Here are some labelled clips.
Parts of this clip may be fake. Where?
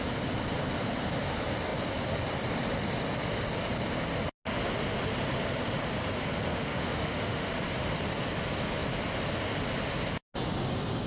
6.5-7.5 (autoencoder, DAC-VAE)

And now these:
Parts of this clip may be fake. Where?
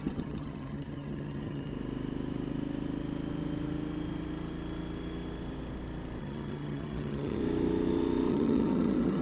0.0-1.7 (vocoder, HiFi-GAN); 6.2-7.4; 8.3-9.2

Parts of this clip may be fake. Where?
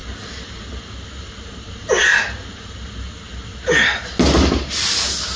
none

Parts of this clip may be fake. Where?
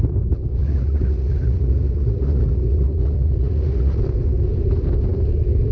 0.6-4.0 (vocoder, Vocos)